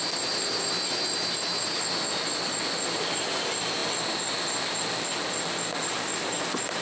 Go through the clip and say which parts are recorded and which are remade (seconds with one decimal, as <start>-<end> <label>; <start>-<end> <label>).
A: 0.0-6.8 recorded